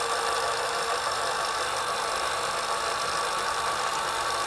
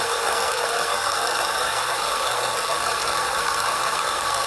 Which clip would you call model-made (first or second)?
second